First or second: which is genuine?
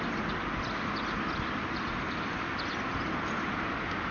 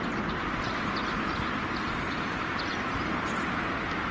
first